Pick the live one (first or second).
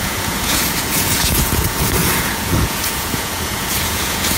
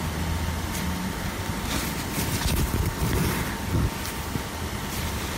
second